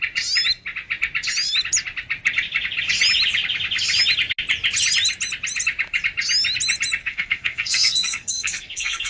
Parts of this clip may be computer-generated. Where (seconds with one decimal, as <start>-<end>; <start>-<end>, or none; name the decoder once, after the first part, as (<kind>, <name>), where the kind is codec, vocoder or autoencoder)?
7.0-9.1 (codec, SNAC)